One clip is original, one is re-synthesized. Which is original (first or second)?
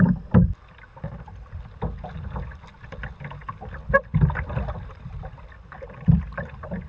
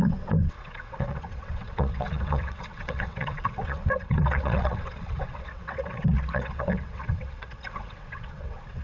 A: first